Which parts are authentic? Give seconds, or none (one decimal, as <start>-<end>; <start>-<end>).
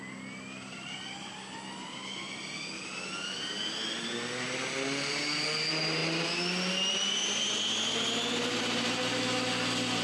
0.0-10.0